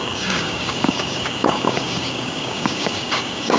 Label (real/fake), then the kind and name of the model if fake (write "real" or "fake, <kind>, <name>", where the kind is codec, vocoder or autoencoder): fake, codec, DAC